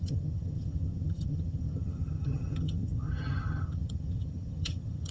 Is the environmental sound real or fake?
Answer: fake